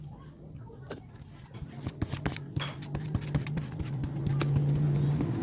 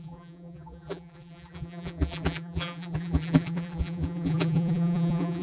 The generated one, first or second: second